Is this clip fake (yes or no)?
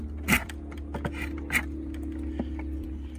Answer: no